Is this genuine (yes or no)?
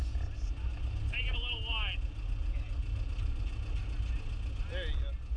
yes